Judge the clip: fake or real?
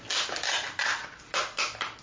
real